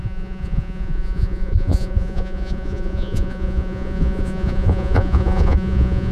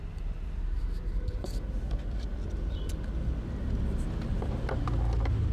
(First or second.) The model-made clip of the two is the first